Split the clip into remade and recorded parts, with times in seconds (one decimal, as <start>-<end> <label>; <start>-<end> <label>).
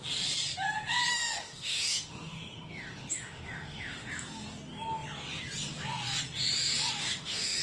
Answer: 0.0-1.1 recorded; 1.1-4.1 remade; 4.1-7.0 recorded; 7.0-7.6 remade